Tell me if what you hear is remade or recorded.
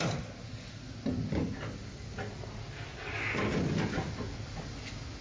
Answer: recorded